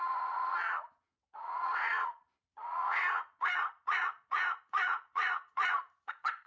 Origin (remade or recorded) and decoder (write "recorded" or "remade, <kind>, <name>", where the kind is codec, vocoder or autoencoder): remade, vocoder, Vocos